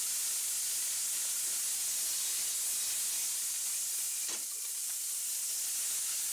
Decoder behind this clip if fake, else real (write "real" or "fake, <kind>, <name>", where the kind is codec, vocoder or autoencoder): real